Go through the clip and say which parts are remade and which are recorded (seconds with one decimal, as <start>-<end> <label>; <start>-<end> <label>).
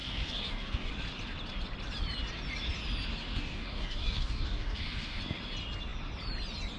0.0-0.9 remade; 0.9-3.3 recorded; 3.3-5.2 remade; 5.2-6.8 recorded